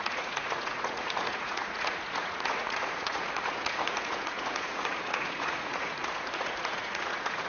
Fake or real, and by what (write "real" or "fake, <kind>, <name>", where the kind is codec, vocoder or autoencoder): fake, vocoder, Vocos